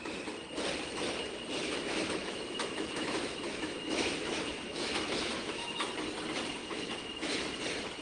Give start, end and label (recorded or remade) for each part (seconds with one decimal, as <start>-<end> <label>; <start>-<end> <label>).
0.0-1.6 recorded; 1.6-5.9 remade; 5.9-6.6 recorded; 6.6-7.6 remade; 7.6-8.0 recorded